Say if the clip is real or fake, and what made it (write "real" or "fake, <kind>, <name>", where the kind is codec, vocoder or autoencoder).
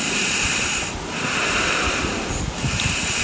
real